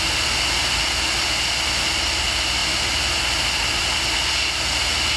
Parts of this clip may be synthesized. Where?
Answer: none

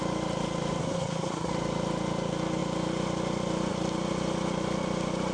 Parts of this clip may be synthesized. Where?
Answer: 0.8-1.5

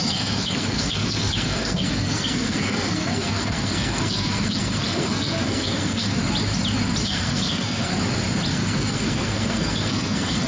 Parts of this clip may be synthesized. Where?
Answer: 0.0-6.2; 7.0-7.9; 8.5-10.5

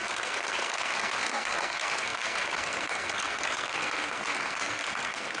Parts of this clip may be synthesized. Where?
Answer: 0.0-5.4

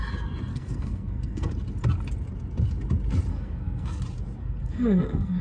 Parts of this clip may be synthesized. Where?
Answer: 0.5-1.5; 3.3-4.0; 4.4-5.4

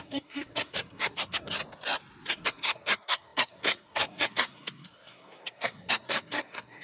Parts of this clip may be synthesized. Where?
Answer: 0.0-1.6; 2.3-6.8

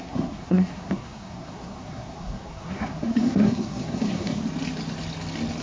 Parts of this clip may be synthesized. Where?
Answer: 0.0-4.4